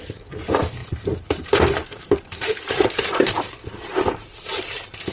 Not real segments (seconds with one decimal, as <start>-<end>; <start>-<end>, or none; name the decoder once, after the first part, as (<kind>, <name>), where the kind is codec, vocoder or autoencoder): 0.8-3.1 (vocoder, BigVGAN v2)